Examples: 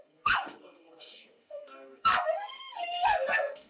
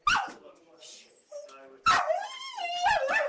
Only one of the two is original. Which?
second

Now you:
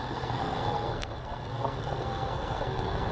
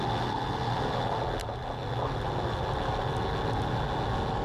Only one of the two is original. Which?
second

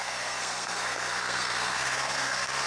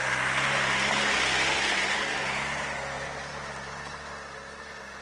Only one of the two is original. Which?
second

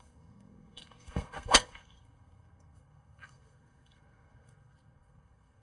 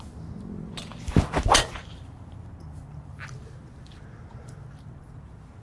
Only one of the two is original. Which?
second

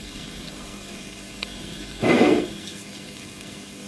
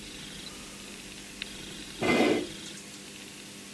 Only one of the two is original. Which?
second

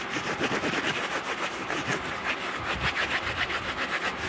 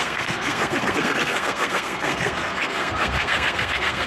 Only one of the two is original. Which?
first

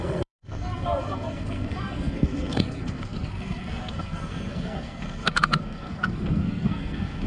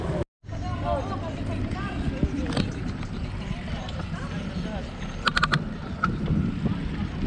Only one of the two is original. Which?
second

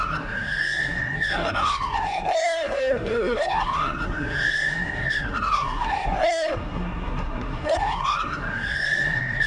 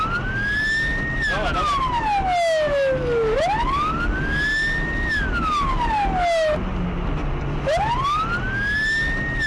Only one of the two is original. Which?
second